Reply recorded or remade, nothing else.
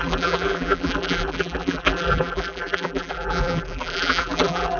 remade